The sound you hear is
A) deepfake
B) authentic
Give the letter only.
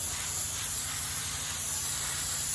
A